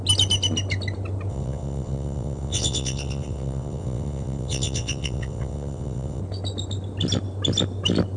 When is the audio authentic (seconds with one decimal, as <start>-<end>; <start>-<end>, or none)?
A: 0.0-1.3; 6.2-8.2